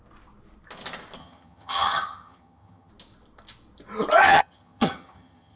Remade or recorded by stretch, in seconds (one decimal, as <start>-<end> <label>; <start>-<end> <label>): 0.0-1.2 recorded; 1.2-2.9 remade; 2.9-4.2 recorded; 4.2-5.6 remade